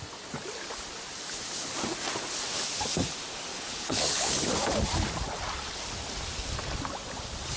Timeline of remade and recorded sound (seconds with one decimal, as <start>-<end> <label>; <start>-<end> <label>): 0.0-3.5 recorded; 3.5-4.3 remade; 4.3-7.6 recorded